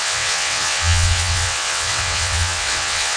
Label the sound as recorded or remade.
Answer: remade